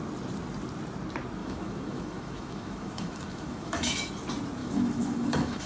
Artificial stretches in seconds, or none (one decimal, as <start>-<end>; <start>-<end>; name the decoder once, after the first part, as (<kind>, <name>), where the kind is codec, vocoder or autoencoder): 1.4-4.1 (autoencoder, DAC-VAE); 4.6-5.7